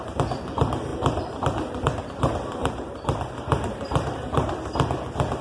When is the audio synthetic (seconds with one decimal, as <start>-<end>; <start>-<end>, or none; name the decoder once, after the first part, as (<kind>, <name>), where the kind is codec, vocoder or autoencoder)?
0.9-2.0 (vocoder, BigVGAN v2); 2.6-4.7